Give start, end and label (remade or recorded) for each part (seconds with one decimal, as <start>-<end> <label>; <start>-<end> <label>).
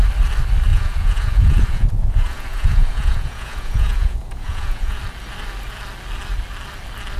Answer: 0.0-0.7 recorded; 0.7-5.0 remade; 5.0-7.2 recorded